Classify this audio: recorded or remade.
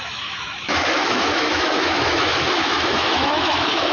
remade